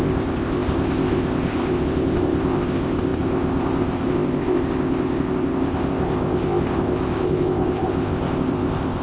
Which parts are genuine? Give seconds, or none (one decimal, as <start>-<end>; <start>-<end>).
none